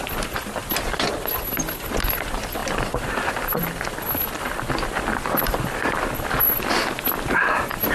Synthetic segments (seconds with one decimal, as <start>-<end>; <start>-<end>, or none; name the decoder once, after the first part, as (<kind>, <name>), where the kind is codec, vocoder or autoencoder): 0.6-1.2 (vocoder, BigVGAN v2); 2.6-6.7